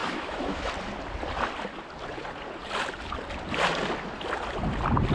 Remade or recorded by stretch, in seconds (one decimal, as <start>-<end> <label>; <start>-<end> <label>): 0.0-0.7 remade; 0.7-5.1 recorded